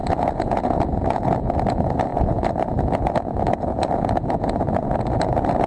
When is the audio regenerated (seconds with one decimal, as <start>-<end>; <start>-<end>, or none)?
0.0-5.7